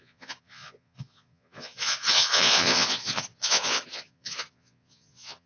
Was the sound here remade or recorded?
remade